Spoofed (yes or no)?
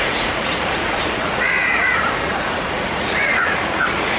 yes